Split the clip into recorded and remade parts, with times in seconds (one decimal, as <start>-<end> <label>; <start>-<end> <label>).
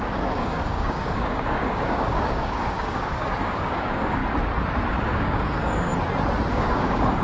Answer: 0.0-4.2 remade; 4.2-4.9 recorded; 4.9-5.9 remade; 5.9-6.5 recorded; 6.5-7.2 remade